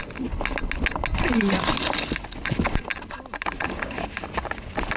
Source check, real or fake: real